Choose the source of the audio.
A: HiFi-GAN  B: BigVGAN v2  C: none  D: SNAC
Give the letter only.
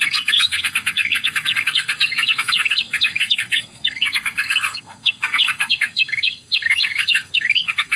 D